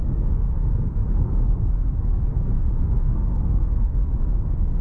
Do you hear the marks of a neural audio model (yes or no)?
yes